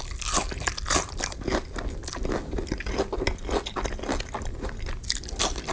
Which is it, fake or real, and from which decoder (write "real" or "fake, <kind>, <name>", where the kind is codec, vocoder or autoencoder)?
real